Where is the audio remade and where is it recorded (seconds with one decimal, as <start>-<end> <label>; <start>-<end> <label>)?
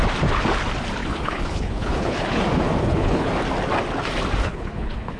0.0-1.0 recorded; 1.0-2.4 remade; 2.4-2.8 recorded; 2.8-3.3 remade; 3.3-4.4 recorded; 4.4-5.2 remade